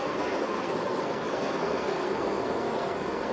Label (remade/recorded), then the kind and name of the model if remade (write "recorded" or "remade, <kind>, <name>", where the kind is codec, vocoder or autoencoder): remade, codec, SNAC